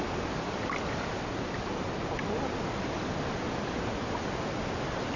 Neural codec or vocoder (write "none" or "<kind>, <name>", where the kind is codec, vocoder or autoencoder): none